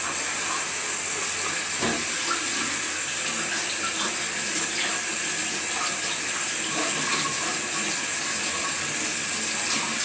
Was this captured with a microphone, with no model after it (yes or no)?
yes